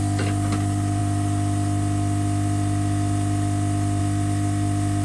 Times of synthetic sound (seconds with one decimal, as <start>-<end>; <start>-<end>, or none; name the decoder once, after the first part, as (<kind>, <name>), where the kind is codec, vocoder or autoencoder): none